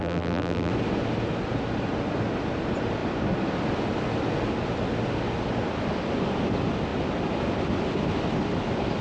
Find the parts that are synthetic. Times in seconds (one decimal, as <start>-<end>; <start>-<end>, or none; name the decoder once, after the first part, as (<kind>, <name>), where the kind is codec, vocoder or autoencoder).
0.0-0.7 (vocoder, BigVGAN v2)